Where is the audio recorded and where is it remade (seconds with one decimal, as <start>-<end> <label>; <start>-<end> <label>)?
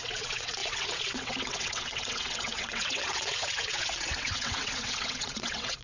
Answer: 0.0-5.8 remade